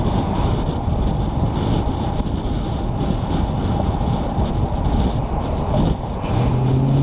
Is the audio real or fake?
real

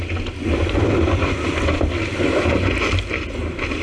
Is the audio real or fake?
real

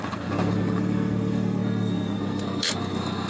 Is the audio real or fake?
fake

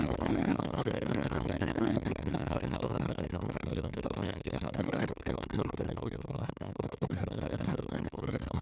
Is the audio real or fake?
fake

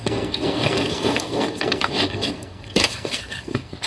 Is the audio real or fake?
fake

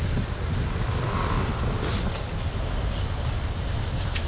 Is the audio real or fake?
real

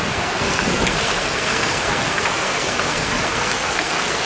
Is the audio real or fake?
fake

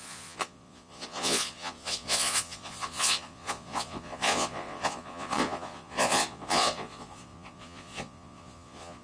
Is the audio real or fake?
fake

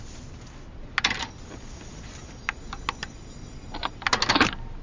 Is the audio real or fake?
real